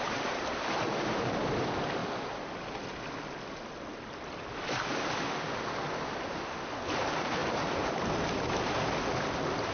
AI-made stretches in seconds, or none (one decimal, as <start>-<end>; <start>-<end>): none